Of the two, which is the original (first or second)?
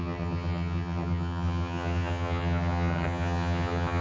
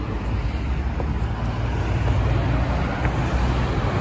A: second